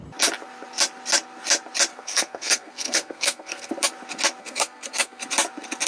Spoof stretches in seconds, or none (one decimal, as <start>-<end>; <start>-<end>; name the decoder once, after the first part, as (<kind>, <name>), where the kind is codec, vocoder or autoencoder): 1.9-3.7 (codec, SNAC); 4.4-5.2